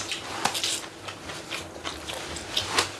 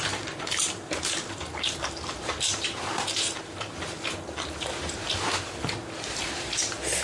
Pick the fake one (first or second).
second